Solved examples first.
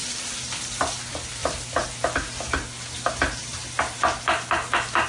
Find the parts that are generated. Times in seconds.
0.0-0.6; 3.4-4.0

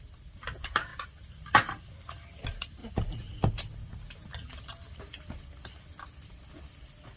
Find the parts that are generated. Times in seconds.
0.0-7.2

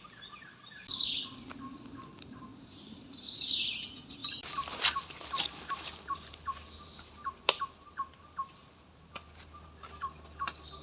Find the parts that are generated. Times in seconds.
2.5-3.7; 4.2-7.3; 8.6-9.1

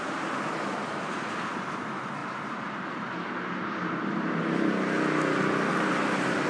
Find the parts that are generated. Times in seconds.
2.2-4.7; 5.7-6.5

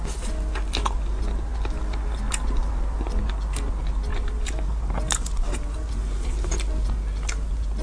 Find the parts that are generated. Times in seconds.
4.1-5.5; 6.0-6.5

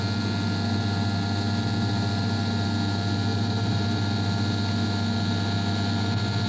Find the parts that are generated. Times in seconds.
3.3-3.8